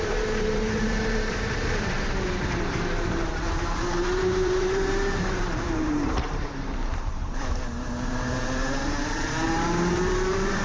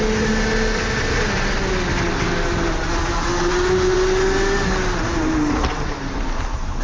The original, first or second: second